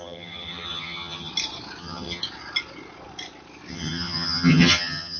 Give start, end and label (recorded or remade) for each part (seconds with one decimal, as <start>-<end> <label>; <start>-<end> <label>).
0.0-1.3 remade; 1.3-1.8 recorded; 1.8-2.2 remade; 2.2-3.7 recorded; 3.7-5.2 remade